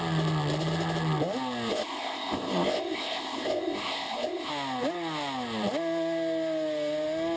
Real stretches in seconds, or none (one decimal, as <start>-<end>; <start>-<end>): 0.0-1.7; 4.5-7.4